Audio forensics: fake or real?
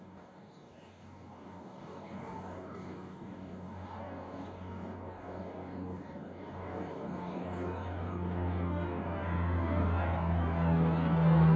fake